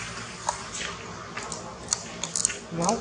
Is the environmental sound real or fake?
real